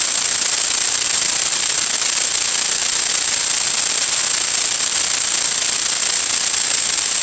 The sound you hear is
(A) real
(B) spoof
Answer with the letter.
A